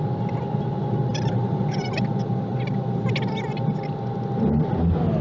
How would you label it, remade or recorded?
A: recorded